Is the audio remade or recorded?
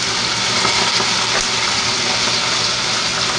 recorded